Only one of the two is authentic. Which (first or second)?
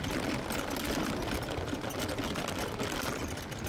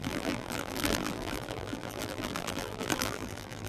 first